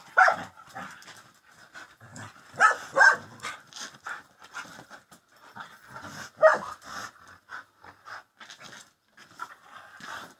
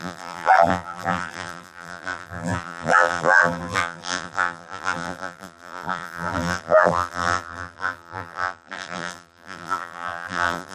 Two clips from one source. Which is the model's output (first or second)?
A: second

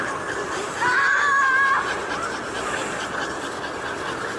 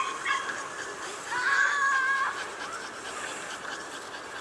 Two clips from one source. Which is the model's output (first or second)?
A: second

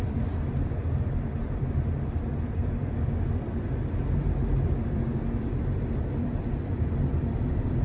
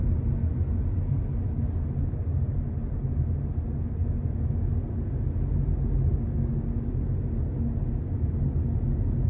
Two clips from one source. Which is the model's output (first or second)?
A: first